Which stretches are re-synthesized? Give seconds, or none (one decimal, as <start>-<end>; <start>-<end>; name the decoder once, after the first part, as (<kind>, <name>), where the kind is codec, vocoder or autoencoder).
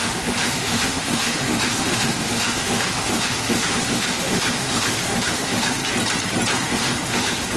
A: 0.0-5.8 (autoencoder, DAC-VAE); 6.6-7.6